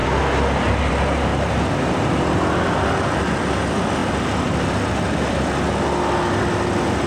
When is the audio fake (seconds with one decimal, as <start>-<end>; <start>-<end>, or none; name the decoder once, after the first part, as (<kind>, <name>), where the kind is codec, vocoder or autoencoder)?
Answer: 1.3-2.0 (vocoder, BigVGAN v2)